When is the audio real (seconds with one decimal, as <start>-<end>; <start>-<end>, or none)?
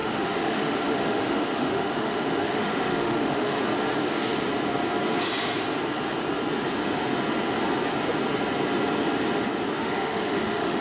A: 3.6-9.8